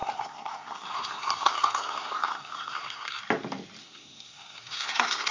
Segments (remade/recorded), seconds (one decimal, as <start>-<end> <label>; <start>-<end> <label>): 0.0-3.2 remade; 3.2-3.8 recorded; 3.8-5.3 remade